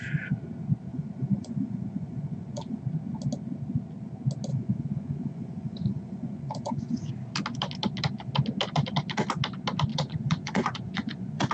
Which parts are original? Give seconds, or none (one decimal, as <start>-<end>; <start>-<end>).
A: 0.0-0.9; 2.8-4.5; 7.1-9.9